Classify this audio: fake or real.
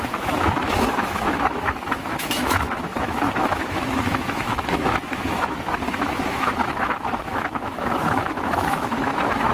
fake